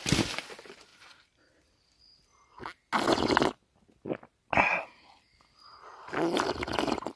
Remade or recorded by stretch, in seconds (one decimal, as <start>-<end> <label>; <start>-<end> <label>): 0.0-7.2 recorded